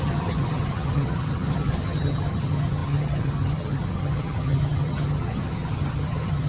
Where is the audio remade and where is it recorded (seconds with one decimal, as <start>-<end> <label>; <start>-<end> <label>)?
0.0-6.5 remade